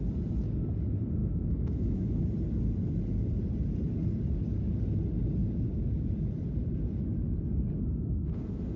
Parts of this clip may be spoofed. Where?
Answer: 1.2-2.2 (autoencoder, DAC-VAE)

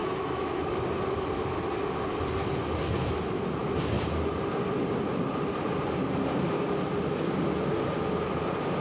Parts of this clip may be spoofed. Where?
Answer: 0.0-0.5 (autoencoder, DAC-VAE)

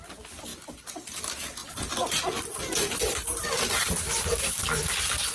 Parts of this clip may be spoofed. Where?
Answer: none

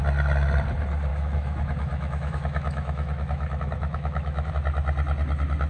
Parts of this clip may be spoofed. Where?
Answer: 1.1-4.5 (autoencoder, DAC-VAE)

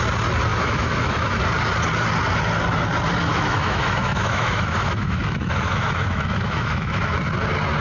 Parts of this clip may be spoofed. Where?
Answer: 0.5-1.4 (autoencoder, DAC-VAE); 3.3-7.2